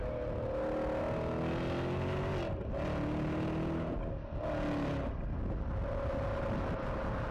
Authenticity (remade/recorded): recorded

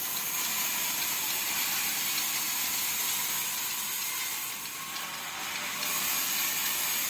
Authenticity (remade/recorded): recorded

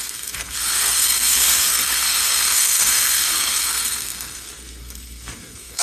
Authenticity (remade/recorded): remade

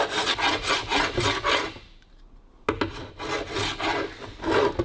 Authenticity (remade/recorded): recorded